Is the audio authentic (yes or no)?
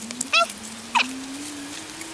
yes